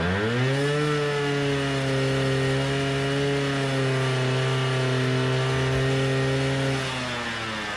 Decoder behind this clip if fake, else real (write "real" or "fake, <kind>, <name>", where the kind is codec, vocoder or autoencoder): real